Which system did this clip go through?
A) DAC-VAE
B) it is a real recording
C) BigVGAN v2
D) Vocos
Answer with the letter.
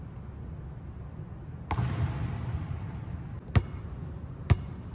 B